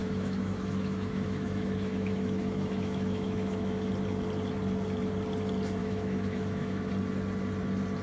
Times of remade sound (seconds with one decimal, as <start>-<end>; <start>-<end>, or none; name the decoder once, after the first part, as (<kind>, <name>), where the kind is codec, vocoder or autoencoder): 0.0-3.9 (autoencoder, DAC-VAE); 5.8-6.9